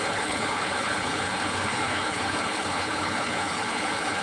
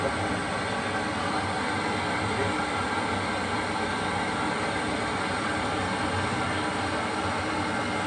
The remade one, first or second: first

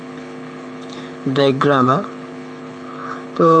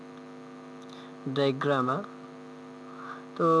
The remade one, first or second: first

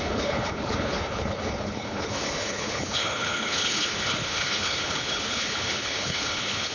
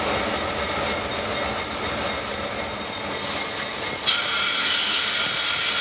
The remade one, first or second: first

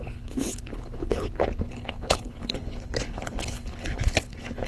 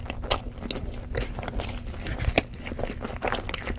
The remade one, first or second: first